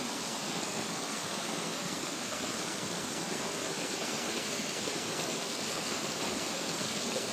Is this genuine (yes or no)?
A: no